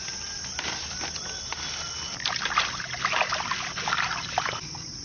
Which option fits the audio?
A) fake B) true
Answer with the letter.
B